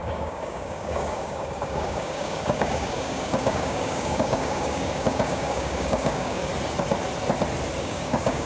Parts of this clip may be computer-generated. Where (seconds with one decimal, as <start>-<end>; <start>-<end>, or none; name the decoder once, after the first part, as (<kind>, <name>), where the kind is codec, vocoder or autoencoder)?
0.0-6.5 (codec, DAC); 7.8-8.5